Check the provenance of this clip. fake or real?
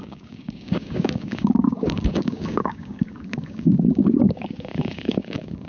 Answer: fake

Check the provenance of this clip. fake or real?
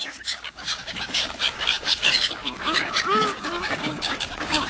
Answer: fake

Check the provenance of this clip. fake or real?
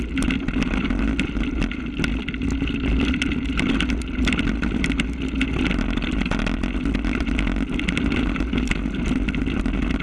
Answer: real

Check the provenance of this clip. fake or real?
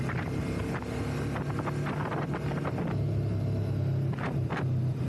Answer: real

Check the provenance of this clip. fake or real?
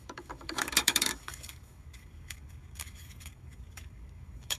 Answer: fake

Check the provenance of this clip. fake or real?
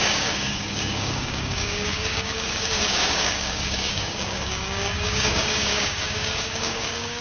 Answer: fake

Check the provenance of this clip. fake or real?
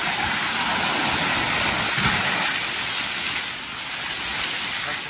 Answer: real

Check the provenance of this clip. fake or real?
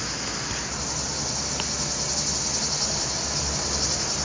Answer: real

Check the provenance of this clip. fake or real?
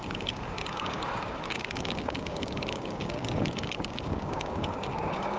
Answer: fake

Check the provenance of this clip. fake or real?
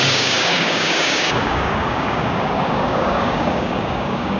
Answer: fake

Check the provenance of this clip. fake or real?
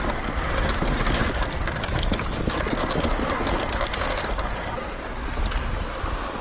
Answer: real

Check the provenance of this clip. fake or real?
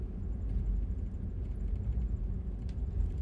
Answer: real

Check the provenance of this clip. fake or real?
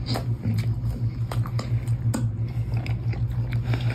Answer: real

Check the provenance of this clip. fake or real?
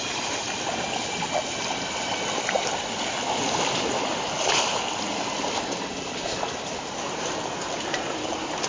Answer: real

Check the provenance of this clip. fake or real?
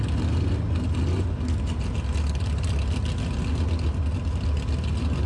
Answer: real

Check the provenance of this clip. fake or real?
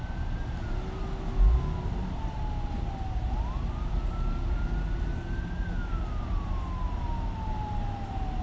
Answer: real